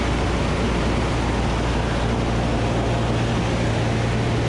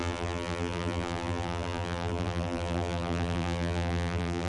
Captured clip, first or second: first